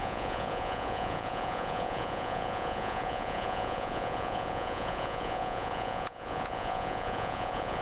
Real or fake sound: fake